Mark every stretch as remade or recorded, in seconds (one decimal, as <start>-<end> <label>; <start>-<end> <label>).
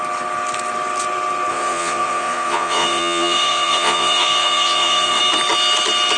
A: 0.0-1.5 recorded; 1.5-5.2 remade; 5.2-6.2 recorded